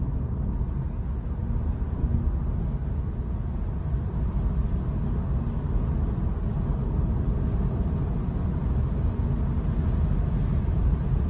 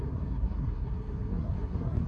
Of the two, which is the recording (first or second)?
first